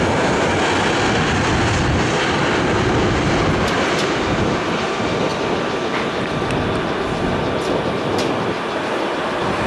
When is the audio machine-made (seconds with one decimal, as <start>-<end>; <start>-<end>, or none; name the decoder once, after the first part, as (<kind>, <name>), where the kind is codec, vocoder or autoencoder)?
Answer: none